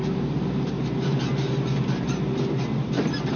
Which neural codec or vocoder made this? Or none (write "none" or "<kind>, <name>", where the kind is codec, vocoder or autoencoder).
none